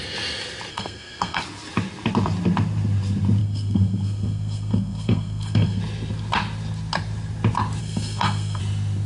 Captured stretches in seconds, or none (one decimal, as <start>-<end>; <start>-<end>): 0.0-0.7; 1.4-3.4; 5.8-7.8; 8.6-9.1